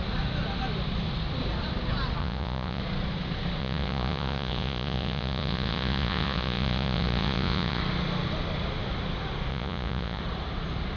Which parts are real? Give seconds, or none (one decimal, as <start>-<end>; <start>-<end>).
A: 0.0-2.2; 2.8-3.6; 7.8-9.5; 10.2-11.0